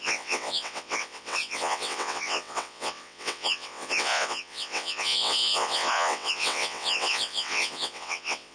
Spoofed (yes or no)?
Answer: yes